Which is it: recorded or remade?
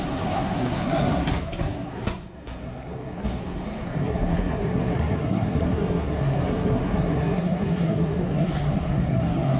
remade